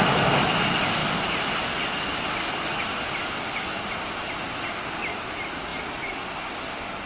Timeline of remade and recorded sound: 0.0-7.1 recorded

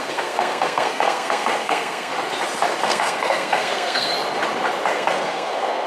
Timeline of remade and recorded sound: 0.0-2.1 remade; 2.1-2.8 recorded; 2.8-4.1 remade; 4.1-4.9 recorded; 4.9-5.9 remade

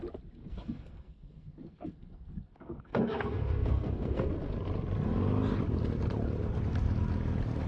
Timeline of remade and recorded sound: 0.0-0.4 recorded; 0.4-4.3 remade; 4.3-7.7 recorded

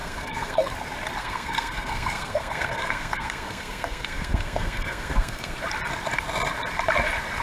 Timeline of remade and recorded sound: 0.0-0.7 remade; 0.7-1.2 recorded; 1.2-5.6 remade; 5.6-7.4 recorded

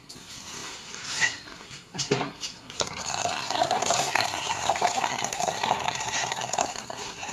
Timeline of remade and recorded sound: 0.0-7.3 remade

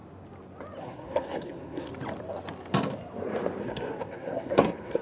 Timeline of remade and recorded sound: 0.0-0.8 recorded; 0.8-1.9 remade; 1.9-3.6 recorded; 3.6-5.0 remade

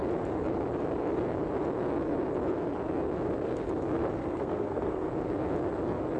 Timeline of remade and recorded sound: 0.0-4.2 recorded; 4.2-5.1 remade; 5.1-6.2 recorded